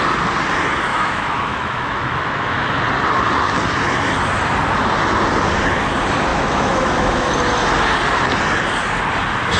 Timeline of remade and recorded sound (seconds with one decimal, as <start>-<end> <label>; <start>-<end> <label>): 0.0-0.9 recorded; 0.9-2.8 remade; 2.8-6.3 recorded; 6.3-7.3 remade; 7.3-9.6 recorded